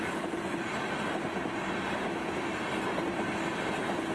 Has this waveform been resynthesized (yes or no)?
no